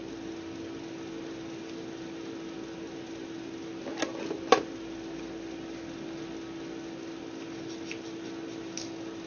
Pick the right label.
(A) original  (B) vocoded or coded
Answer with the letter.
A